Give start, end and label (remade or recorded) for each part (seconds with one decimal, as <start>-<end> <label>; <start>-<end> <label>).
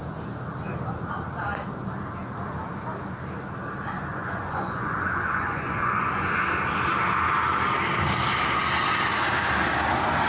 0.0-4.1 recorded; 4.1-6.4 remade; 6.4-10.3 recorded